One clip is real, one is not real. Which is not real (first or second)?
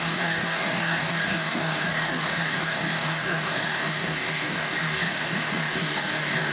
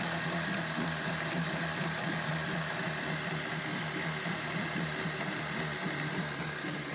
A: first